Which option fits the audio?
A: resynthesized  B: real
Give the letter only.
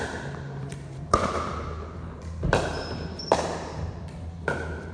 A